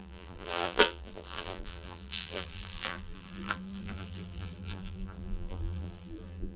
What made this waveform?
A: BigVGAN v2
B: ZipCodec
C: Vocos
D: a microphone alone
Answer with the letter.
A